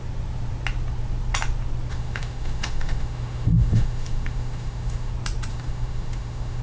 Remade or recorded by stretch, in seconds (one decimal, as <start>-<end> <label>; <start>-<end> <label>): 0.0-1.9 recorded; 1.9-5.1 remade; 5.1-5.5 recorded; 5.5-6.6 remade